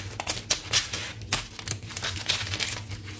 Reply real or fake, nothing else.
real